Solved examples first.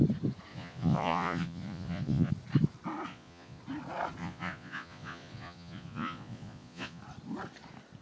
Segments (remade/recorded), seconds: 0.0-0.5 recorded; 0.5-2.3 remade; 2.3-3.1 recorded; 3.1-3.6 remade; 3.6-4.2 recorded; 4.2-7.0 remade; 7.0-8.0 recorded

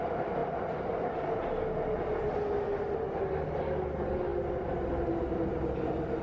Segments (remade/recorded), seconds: 0.0-6.2 recorded

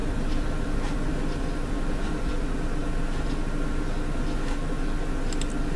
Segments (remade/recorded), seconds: 0.0-2.3 remade; 2.3-5.8 recorded

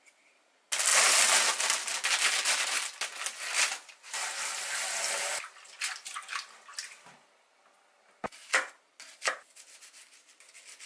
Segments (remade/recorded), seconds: 0.0-10.9 recorded

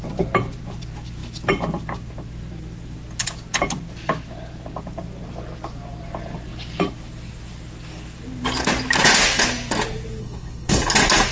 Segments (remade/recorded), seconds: 0.0-10.2 recorded; 10.2-10.8 remade; 10.8-11.3 recorded

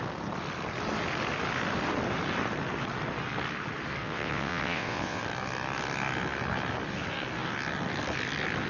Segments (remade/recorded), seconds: 0.0-4.0 recorded; 4.0-5.2 remade; 5.2-8.7 recorded

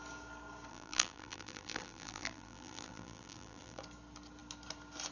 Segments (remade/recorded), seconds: 0.0-0.7 recorded; 0.7-3.8 remade; 3.8-5.1 recorded